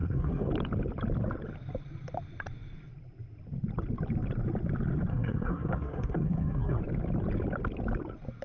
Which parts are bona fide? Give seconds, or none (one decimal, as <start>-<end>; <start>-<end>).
0.5-5.1; 6.8-8.4